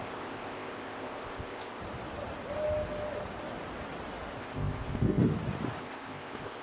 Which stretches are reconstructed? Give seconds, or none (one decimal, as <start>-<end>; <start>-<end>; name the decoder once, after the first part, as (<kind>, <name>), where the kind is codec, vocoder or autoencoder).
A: 0.0-1.8 (codec, ZipCodec); 4.4-5.2; 5.8-6.6